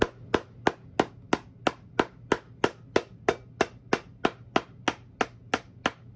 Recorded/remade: recorded